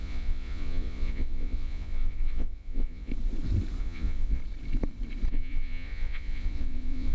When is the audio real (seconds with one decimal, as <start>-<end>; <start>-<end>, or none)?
3.1-3.8; 4.4-5.3